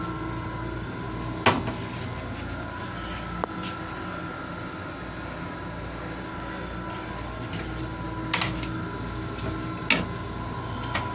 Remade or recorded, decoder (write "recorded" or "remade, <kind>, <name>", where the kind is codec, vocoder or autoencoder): recorded